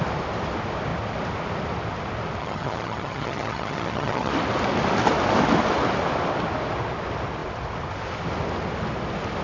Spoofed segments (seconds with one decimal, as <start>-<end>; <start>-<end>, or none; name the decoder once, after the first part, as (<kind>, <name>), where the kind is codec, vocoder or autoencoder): 2.4-4.3 (vocoder, HiFi-GAN)